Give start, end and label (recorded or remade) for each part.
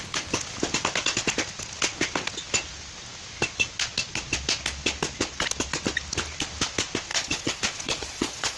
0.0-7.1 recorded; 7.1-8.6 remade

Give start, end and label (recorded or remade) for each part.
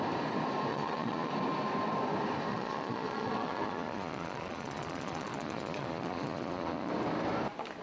0.0-0.7 recorded; 0.7-1.3 remade; 1.3-2.5 recorded; 2.5-6.9 remade; 6.9-7.8 recorded